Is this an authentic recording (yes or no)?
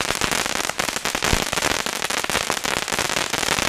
yes